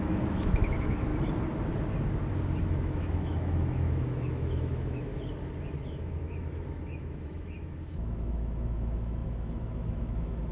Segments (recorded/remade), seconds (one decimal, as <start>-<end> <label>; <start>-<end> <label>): 0.0-1.1 remade; 1.1-2.6 recorded; 2.6-5.1 remade; 5.1-5.9 recorded; 5.9-10.5 remade